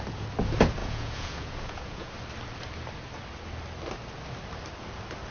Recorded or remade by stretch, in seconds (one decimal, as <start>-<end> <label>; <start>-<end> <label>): 0.0-0.8 recorded; 0.8-2.1 remade; 2.1-5.3 recorded